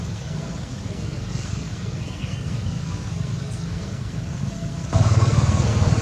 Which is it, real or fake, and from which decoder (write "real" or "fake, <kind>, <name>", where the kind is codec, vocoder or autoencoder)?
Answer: fake, codec, SNAC